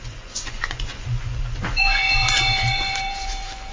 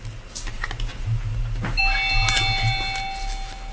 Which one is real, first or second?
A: second